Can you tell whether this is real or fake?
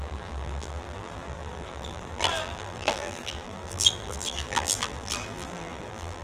fake